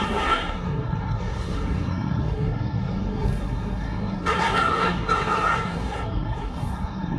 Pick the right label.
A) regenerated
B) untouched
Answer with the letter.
A